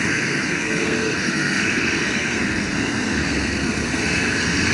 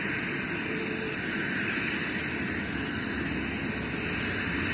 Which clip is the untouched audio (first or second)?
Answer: second